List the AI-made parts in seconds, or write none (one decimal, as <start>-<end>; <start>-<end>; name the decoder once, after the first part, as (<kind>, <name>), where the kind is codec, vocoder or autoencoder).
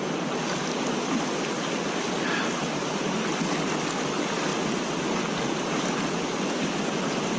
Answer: none